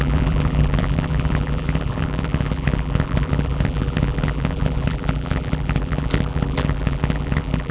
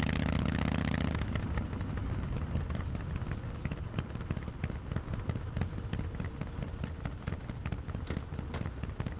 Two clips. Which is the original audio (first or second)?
second